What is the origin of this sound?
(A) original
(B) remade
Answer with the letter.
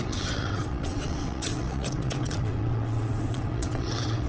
B